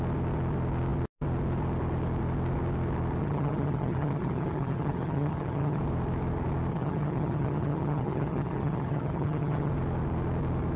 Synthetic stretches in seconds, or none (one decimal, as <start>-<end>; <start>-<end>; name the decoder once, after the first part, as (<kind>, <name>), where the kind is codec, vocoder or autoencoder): 3.2-5.8 (vocoder, HiFi-GAN); 6.7-9.7